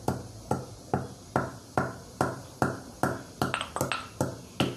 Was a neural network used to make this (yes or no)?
no